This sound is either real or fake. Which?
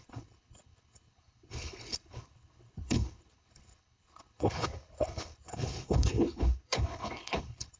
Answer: fake